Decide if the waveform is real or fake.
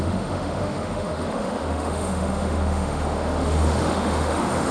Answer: fake